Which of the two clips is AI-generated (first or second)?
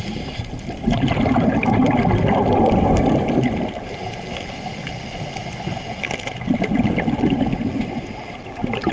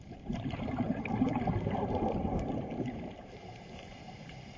second